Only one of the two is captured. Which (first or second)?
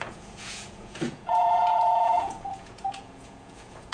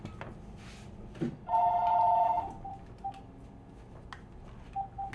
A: second